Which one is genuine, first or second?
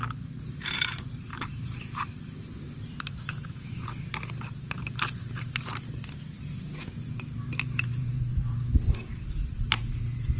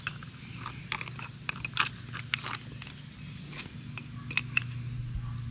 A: second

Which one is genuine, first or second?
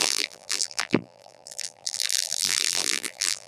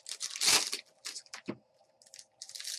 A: second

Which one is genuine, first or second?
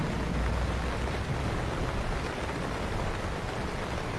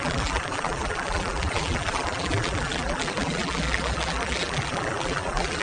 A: first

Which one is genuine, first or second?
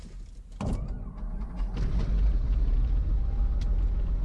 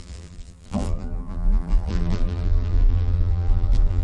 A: first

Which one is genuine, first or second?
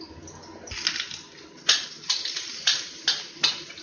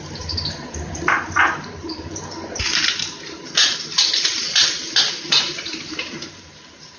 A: first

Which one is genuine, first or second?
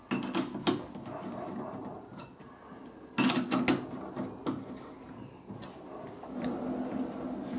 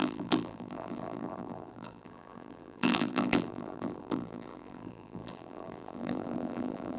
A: first